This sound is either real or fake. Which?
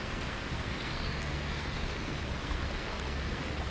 fake